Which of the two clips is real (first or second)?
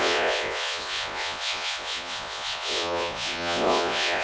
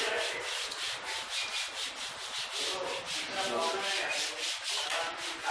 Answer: second